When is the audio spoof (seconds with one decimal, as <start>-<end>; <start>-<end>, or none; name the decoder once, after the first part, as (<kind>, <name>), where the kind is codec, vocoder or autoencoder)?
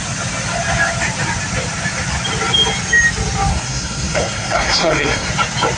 3.5-5.3 (codec, SNAC)